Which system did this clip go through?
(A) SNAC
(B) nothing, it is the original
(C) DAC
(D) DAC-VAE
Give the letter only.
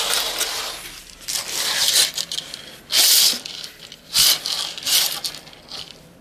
B